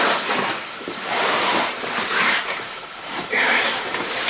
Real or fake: fake